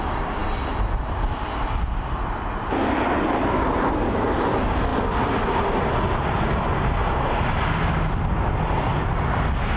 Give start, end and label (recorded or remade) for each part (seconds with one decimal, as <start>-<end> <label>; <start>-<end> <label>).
0.0-9.8 recorded